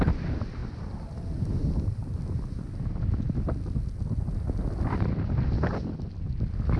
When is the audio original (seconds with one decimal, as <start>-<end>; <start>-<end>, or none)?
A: 0.0-6.8